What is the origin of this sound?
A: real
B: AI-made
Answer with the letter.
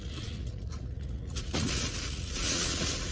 B